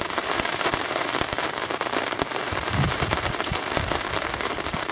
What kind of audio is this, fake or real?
fake